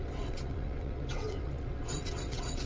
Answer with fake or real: fake